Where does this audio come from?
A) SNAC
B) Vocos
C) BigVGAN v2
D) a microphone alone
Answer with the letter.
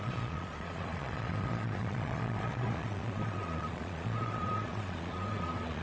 B